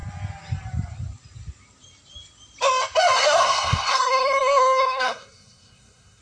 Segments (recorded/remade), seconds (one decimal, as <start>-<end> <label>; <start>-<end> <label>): 0.0-3.2 recorded; 3.2-6.2 remade